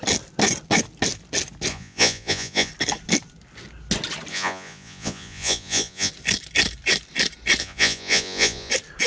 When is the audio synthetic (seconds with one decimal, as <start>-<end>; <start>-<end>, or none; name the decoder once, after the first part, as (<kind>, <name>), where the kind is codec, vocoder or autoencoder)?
1.7-2.7 (vocoder, Vocos); 4.3-6.1; 7.6-8.7